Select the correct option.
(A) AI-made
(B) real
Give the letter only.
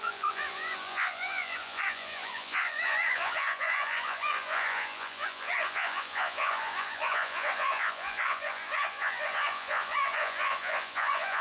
A